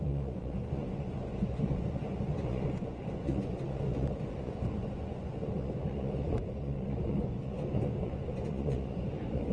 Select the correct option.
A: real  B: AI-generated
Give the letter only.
B